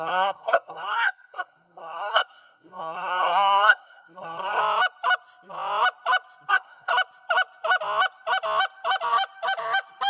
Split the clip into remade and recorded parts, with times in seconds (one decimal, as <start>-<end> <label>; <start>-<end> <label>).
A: 0.0-4.6 remade; 4.6-6.5 recorded; 6.5-6.9 remade; 6.9-10.1 recorded

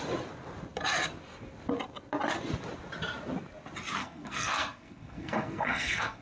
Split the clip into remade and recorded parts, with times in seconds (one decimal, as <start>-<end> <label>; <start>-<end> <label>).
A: 0.0-4.0 recorded; 4.0-6.2 remade

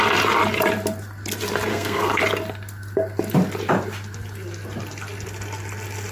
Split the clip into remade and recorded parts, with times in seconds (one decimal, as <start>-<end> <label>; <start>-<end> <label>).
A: 0.0-1.7 recorded; 1.7-2.2 remade; 2.2-6.1 recorded